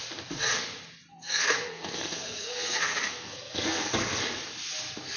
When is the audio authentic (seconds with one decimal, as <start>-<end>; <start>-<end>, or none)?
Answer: 0.0-1.1; 4.2-5.2